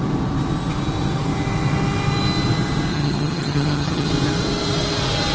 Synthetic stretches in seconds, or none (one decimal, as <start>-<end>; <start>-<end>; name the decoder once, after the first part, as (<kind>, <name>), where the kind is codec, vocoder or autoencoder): 2.9-4.1 (vocoder, HiFi-GAN)